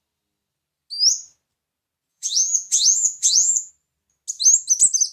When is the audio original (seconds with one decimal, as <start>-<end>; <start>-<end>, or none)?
0.0-2.1; 3.7-5.1